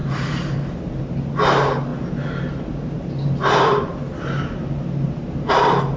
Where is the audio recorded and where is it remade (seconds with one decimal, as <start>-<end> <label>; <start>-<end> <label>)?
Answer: 0.0-1.0 remade; 1.0-1.9 recorded; 1.9-5.5 remade; 5.5-6.0 recorded